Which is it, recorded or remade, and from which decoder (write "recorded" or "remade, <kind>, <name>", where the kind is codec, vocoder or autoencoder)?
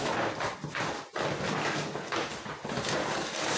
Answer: recorded